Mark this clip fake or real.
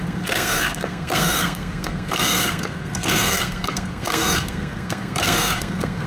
fake